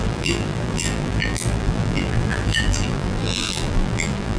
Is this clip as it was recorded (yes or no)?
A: no